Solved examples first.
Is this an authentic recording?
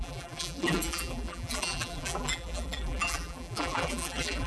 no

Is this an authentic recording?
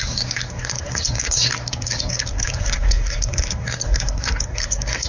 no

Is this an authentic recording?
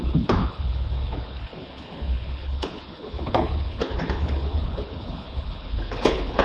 no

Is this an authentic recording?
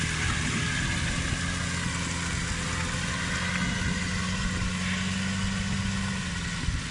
yes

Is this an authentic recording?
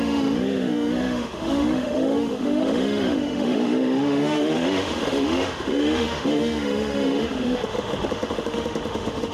no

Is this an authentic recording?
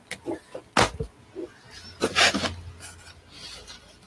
yes